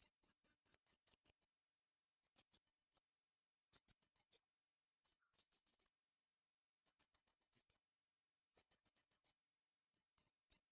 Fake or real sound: fake